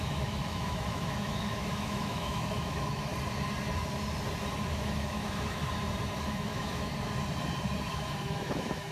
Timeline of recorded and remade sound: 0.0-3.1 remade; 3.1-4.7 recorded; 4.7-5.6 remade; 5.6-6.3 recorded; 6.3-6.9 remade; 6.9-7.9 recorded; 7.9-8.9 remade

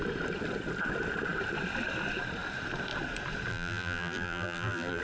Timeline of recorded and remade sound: 0.0-3.5 recorded; 3.5-5.0 remade